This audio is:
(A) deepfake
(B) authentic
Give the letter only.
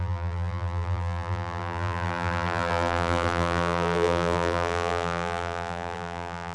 A